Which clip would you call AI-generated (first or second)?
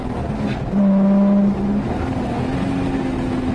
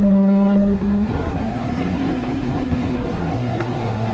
second